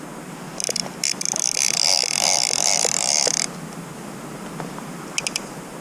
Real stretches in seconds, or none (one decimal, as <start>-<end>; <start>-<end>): 0.0-5.8